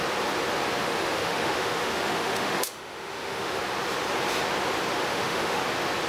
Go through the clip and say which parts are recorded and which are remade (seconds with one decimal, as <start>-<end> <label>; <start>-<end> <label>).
0.0-0.8 recorded; 0.8-3.6 remade; 3.6-5.1 recorded; 5.1-5.6 remade; 5.6-6.1 recorded